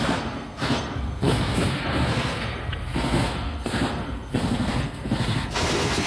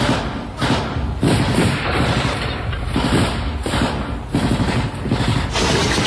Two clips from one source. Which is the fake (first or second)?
first